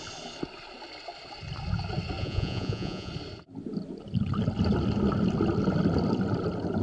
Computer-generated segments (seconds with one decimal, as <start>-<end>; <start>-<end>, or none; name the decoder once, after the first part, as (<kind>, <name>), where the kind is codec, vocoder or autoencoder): 2.2-3.1 (vocoder, Vocos)